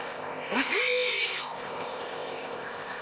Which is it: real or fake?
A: fake